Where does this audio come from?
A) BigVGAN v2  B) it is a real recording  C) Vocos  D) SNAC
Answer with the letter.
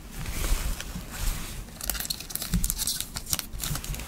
B